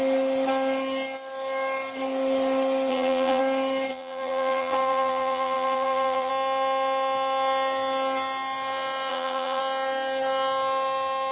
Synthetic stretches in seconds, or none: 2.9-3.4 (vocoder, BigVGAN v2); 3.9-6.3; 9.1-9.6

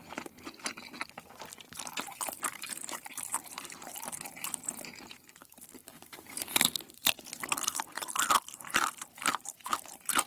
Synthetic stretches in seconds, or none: 1.7-10.3 (vocoder, BigVGAN v2)

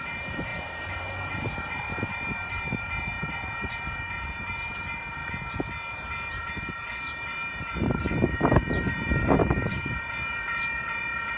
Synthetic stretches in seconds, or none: 0.0-5.2 (vocoder, BigVGAN v2); 6.3-11.4

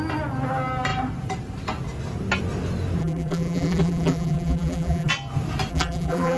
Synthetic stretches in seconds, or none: 3.0-5.1 (vocoder, BigVGAN v2); 5.7-6.4

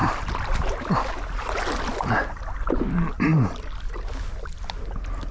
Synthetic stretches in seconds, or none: 0.0-0.9 (vocoder, BigVGAN v2)